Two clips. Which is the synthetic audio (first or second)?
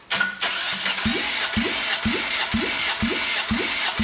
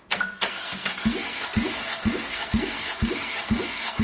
second